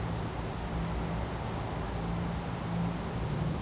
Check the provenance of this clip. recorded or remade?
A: recorded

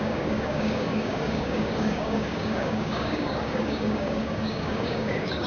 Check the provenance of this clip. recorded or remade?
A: remade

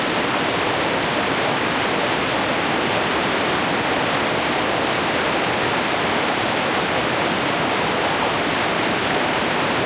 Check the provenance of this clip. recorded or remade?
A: recorded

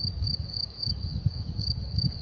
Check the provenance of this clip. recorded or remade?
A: remade